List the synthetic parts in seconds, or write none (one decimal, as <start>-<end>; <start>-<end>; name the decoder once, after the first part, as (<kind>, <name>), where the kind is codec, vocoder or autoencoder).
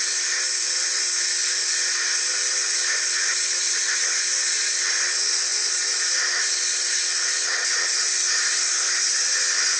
none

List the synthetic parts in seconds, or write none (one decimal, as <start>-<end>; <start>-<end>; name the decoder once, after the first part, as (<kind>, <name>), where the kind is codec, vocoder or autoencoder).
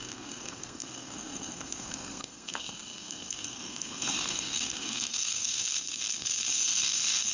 0.0-7.3 (codec, SNAC)